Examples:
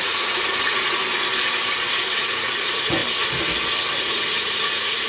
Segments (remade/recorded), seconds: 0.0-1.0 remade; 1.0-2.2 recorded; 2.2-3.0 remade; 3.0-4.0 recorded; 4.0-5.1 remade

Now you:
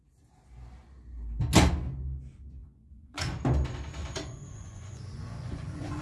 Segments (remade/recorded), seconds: 0.0-2.6 recorded; 2.6-3.4 remade; 3.4-4.0 recorded; 4.0-6.0 remade